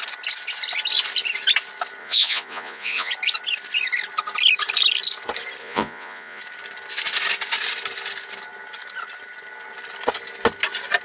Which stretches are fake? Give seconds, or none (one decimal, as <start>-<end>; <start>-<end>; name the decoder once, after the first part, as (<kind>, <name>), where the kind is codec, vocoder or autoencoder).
2.0-3.1 (vocoder, Vocos); 5.6-6.4